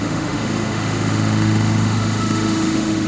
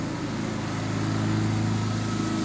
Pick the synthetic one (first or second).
first